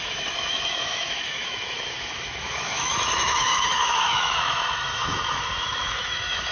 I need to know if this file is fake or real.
fake